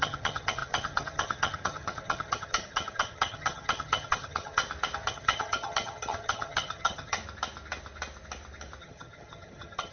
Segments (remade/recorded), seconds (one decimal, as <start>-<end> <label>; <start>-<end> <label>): 0.0-4.6 remade; 4.6-5.1 recorded; 5.1-7.2 remade; 7.2-8.8 recorded; 8.8-9.9 remade